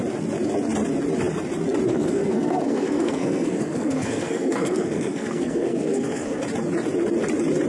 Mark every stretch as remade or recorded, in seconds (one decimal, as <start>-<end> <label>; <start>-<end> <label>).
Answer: 0.0-1.9 recorded; 1.9-6.4 remade; 6.4-7.7 recorded